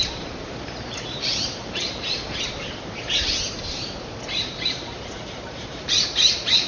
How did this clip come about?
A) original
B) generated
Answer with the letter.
B